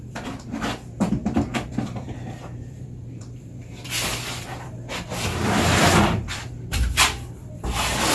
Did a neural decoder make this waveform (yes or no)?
yes